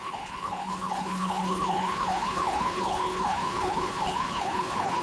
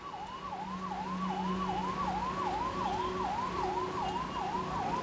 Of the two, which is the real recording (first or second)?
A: second